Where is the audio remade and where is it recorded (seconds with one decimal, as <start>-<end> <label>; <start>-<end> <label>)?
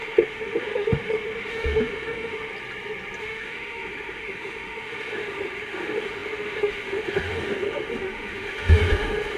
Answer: 0.0-2.5 remade; 2.5-3.2 recorded; 3.2-9.4 remade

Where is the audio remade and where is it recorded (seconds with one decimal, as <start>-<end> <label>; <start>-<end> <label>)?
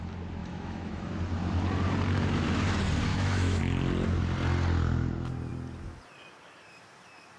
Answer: 0.0-0.4 recorded; 0.4-1.1 remade; 1.1-3.1 recorded; 3.1-3.6 remade; 3.6-7.4 recorded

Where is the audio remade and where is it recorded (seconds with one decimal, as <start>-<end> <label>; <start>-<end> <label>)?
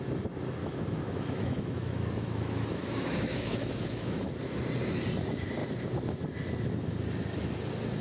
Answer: 0.0-0.6 recorded; 0.6-4.3 remade; 4.3-8.0 recorded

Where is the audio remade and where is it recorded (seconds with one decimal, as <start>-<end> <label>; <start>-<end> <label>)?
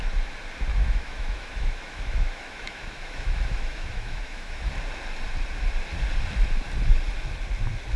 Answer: 0.0-0.7 recorded; 0.7-4.6 remade; 4.6-8.0 recorded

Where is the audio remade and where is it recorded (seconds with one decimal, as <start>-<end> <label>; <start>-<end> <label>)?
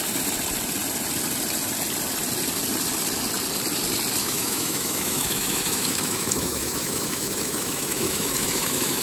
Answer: 0.0-4.2 recorded; 4.2-9.0 remade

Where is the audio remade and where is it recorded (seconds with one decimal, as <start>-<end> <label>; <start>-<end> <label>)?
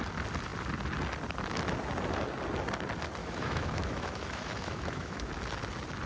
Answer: 0.0-3.2 recorded; 3.2-5.3 remade; 5.3-6.1 recorded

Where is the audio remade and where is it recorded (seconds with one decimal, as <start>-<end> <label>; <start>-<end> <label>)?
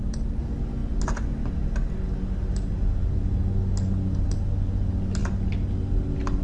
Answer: 0.0-6.4 recorded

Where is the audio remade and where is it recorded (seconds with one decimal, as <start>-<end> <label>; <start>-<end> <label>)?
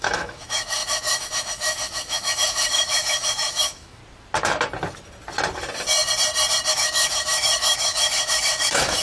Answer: 0.0-4.0 remade; 4.0-6.7 recorded; 6.7-9.0 remade